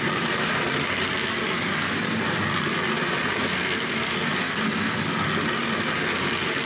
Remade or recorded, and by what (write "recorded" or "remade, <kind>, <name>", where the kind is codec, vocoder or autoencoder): recorded